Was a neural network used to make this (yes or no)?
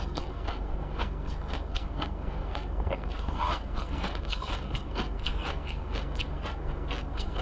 yes